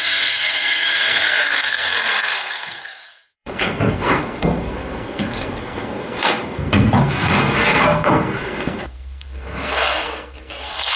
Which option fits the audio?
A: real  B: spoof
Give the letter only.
B